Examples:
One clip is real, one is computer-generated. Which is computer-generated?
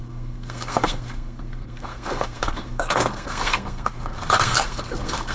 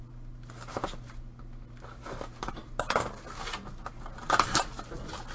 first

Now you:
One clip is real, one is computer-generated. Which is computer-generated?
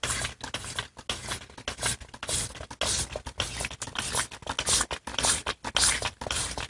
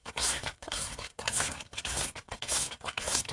second